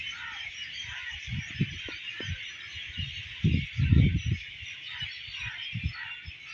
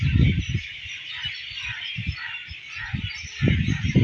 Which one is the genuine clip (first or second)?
first